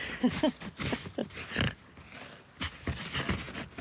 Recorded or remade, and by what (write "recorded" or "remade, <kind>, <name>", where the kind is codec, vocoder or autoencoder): recorded